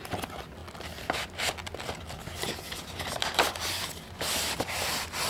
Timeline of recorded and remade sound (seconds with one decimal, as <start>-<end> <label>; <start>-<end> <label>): 0.0-5.3 recorded